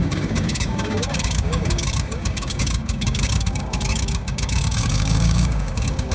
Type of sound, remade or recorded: remade